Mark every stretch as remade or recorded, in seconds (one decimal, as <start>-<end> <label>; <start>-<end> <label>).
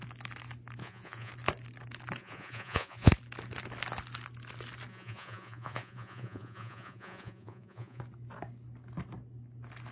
0.0-0.8 recorded; 0.8-1.3 remade; 1.3-2.2 recorded; 2.2-3.1 remade; 3.1-4.9 recorded; 4.9-8.0 remade; 8.0-9.9 recorded